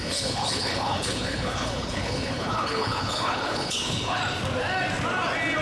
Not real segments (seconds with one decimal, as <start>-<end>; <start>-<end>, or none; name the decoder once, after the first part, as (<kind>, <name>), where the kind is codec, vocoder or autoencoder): 0.0-4.2 (codec, HILCodec)